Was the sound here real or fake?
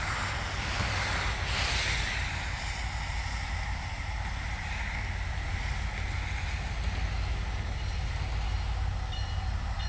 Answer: real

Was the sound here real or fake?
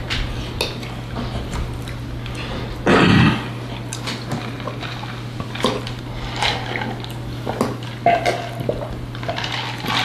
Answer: real